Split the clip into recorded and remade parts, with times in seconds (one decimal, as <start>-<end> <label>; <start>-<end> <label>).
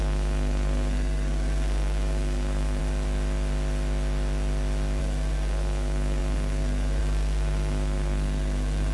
0.0-2.8 remade; 2.8-5.0 recorded; 5.0-8.9 remade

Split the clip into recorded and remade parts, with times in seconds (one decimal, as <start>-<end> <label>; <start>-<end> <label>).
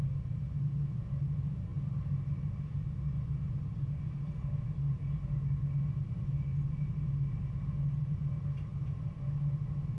0.0-10.0 recorded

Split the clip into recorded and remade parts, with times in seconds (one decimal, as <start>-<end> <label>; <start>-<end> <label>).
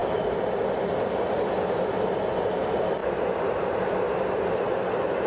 0.0-5.3 recorded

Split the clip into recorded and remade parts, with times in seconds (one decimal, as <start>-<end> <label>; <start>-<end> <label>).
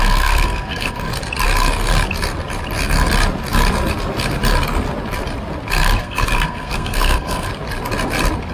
0.0-1.1 remade; 1.1-6.0 recorded; 6.0-7.5 remade; 7.5-8.5 recorded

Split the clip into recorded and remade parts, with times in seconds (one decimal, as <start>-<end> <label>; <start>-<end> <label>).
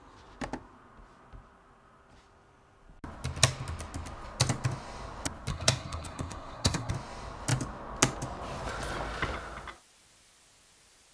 0.0-5.5 recorded; 5.5-6.9 remade; 6.9-11.1 recorded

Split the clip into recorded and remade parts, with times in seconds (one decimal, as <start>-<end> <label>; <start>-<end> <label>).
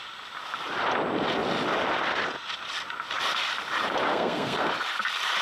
0.0-4.1 recorded; 4.1-4.7 remade; 4.7-5.4 recorded